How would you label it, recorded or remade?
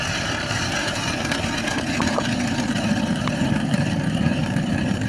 remade